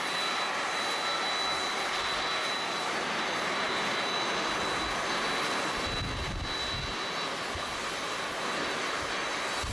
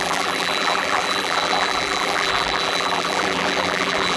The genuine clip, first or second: first